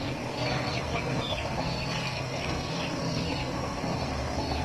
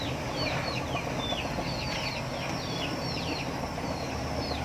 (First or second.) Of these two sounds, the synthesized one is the first